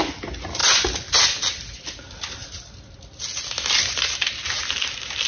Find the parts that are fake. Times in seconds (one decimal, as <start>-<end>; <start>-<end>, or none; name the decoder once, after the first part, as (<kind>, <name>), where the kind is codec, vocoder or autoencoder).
none